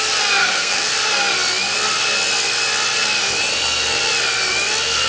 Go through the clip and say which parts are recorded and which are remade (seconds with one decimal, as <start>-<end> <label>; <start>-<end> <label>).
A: 0.0-0.4 recorded; 0.4-0.9 remade; 0.9-5.1 recorded